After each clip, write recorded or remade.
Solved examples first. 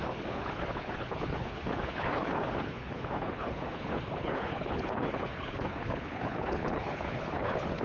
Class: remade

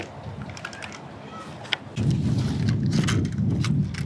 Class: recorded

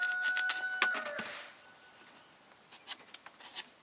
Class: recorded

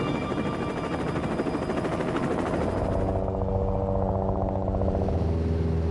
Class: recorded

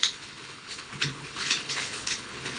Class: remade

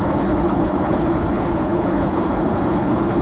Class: remade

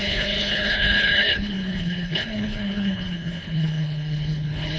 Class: remade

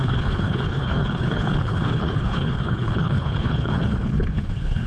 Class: remade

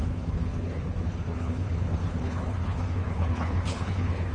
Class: remade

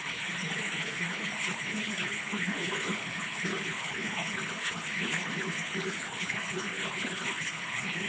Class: remade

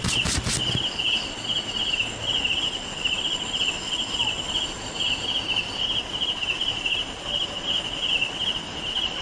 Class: recorded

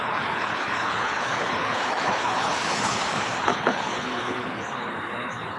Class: remade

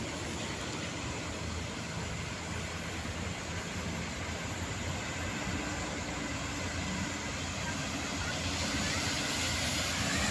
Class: recorded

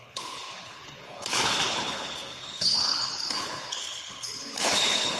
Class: remade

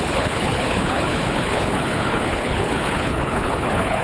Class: remade